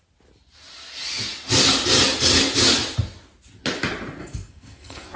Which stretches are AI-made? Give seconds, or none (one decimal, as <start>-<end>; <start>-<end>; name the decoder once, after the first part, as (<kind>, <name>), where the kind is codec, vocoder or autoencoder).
4.2-5.2 (codec, SNAC)